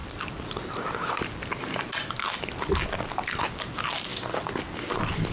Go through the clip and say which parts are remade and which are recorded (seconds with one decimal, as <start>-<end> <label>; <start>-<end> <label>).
0.0-5.3 recorded